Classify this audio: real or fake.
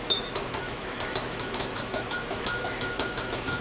fake